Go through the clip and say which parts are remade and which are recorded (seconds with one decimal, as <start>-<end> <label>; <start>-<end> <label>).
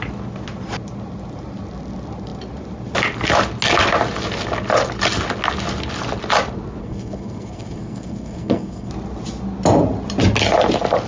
0.0-6.8 recorded; 6.8-8.9 remade; 8.9-11.1 recorded